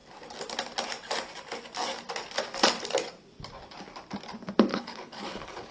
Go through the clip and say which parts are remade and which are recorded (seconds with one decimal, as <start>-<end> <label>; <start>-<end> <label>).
0.0-4.7 recorded; 4.7-5.7 remade